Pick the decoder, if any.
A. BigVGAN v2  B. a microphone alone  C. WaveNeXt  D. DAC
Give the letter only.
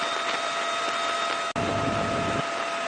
B